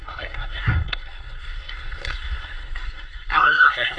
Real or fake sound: fake